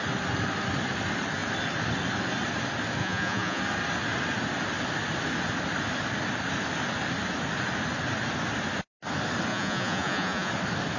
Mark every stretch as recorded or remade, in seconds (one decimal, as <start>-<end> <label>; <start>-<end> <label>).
0.0-3.0 recorded; 3.0-3.6 remade; 3.6-9.5 recorded; 9.5-10.5 remade; 10.5-11.0 recorded